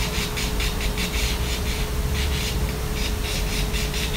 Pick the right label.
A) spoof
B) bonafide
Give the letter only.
A